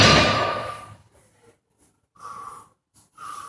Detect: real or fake real